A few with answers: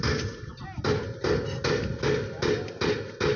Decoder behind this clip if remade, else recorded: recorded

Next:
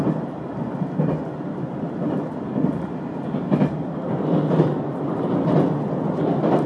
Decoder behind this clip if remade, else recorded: recorded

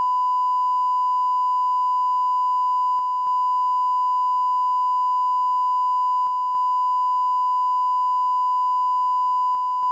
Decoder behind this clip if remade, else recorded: recorded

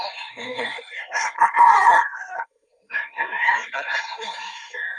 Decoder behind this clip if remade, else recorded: remade, codec, SNAC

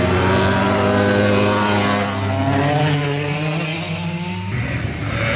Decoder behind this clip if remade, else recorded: recorded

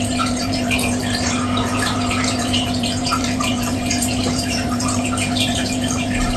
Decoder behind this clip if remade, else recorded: remade, vocoder, BigVGAN v2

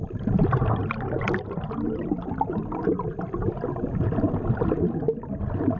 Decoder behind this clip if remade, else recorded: recorded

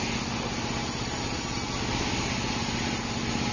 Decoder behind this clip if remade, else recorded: recorded